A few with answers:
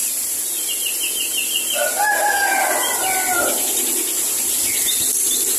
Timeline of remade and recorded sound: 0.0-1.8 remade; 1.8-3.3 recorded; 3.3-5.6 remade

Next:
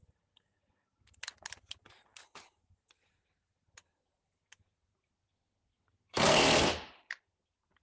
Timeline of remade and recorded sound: 0.0-5.2 recorded; 5.2-6.4 remade; 6.4-7.8 recorded

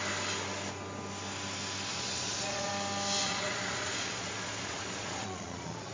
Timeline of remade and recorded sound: 0.0-1.9 recorded; 1.9-2.7 remade; 2.7-3.2 recorded; 3.2-5.9 remade

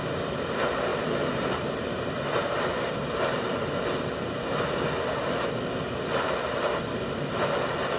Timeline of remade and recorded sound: 0.0-0.9 recorded; 0.9-3.4 remade; 3.4-8.0 recorded

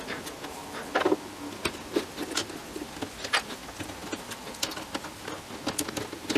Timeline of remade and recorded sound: 0.0-6.4 recorded